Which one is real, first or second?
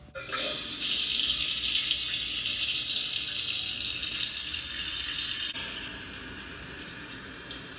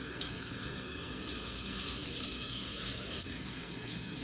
first